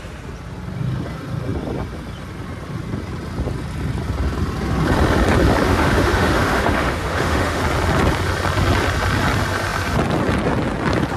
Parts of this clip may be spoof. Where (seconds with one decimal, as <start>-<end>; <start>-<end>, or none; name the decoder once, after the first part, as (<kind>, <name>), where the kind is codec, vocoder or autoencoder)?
5.7-7.6 (autoencoder, DAC-VAE)